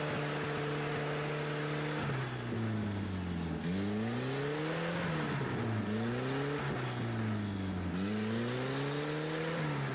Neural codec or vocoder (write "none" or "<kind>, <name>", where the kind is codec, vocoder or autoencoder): none